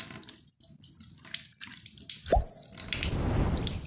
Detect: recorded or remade recorded